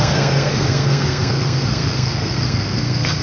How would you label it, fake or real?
fake